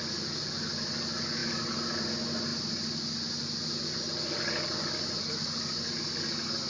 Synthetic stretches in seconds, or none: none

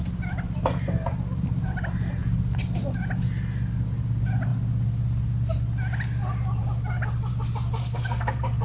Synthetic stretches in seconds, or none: 7.8-8.6

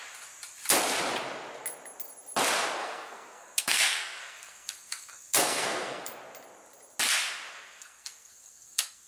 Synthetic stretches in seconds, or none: 2.8-6.0; 7.5-9.1

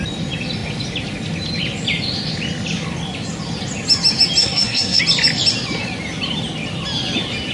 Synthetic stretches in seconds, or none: 4.4-5.0

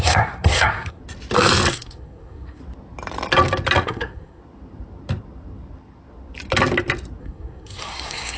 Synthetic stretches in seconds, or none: 0.0-1.0; 1.7-2.6; 3.8-4.4; 7.2-8.4

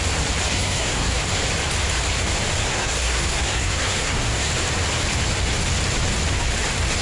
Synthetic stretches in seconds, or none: 0.5-1.2; 2.6-4.5

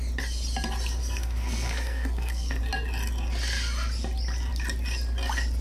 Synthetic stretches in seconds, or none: 1.0-2.6

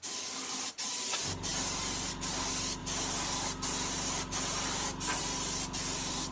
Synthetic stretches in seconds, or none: none